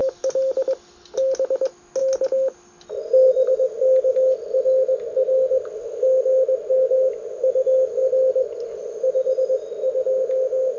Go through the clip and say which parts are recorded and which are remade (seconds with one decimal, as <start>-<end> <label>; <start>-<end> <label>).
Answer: 0.0-10.8 recorded